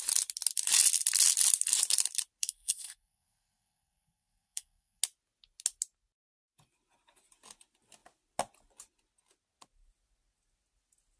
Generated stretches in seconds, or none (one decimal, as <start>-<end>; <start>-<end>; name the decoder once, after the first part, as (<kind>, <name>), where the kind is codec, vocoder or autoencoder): 2.4-5.0 (codec, SNAC)